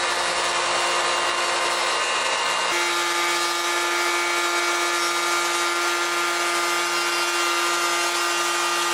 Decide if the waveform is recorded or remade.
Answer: recorded